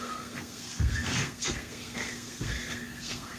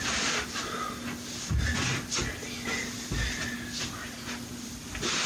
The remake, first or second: first